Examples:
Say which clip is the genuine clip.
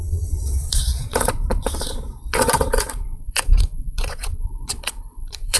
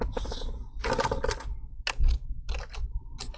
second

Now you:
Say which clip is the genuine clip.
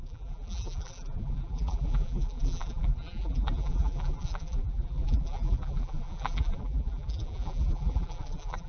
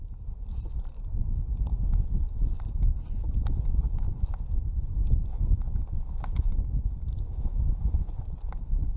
second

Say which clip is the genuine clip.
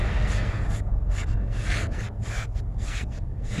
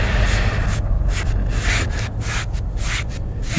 second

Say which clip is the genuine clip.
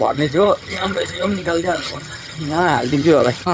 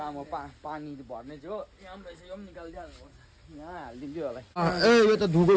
second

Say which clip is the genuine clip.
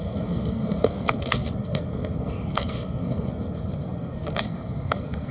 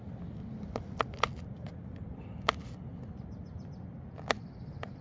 second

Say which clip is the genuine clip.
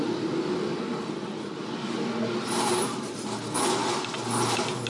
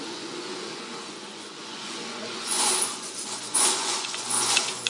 first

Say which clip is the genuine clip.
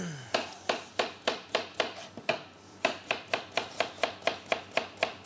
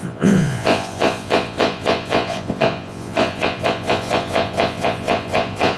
first